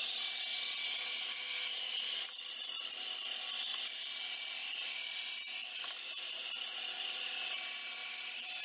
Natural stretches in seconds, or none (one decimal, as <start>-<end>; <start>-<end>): 0.0-8.6